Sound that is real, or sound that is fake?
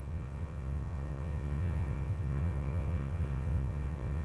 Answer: fake